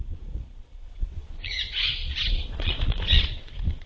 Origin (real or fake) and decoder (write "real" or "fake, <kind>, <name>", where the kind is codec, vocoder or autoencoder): fake, vocoder, Vocos